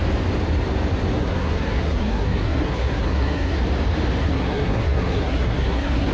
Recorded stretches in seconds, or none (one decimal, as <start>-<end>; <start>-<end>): 0.0-1.2; 3.6-4.2